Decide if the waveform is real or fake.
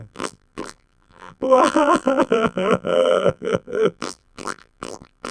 fake